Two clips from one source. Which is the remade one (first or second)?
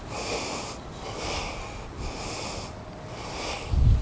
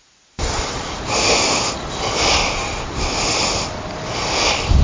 second